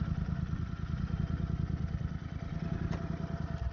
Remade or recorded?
recorded